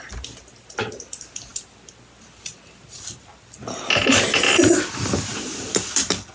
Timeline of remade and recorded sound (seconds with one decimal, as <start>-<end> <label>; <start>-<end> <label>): 0.0-6.3 recorded